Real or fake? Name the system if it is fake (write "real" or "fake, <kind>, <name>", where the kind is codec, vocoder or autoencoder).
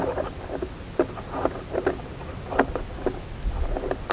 real